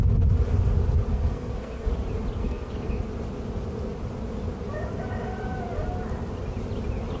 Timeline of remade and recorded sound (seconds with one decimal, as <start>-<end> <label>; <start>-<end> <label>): 0.0-1.1 recorded; 1.1-1.9 remade; 1.9-2.4 recorded; 2.4-3.0 remade; 3.0-7.2 recorded